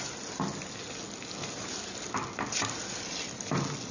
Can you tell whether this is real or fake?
real